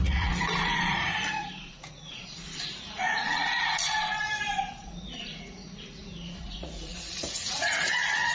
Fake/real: fake